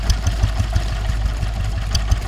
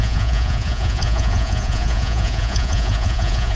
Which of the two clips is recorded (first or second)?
first